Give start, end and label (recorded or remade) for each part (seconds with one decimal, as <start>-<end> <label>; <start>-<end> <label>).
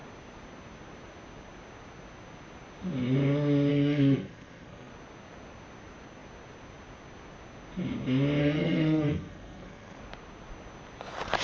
0.0-3.7 recorded; 3.7-4.9 remade; 4.9-8.4 recorded; 8.4-10.0 remade; 10.0-11.4 recorded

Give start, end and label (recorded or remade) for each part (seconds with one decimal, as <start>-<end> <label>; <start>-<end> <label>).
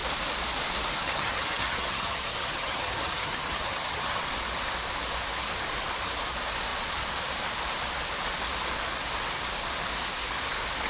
0.0-0.9 recorded; 0.9-4.2 remade; 4.2-10.9 recorded